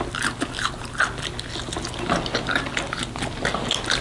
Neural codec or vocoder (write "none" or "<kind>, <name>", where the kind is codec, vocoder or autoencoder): none